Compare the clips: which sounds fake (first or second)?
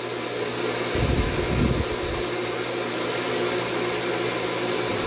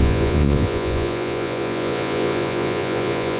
second